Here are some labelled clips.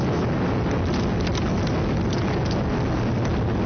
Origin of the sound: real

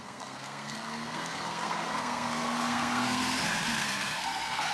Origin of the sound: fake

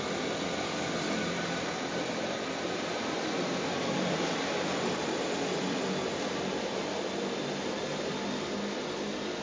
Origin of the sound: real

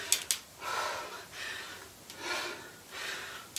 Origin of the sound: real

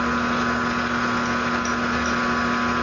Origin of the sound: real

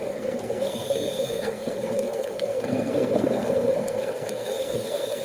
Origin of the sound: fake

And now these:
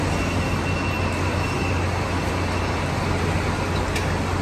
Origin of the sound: real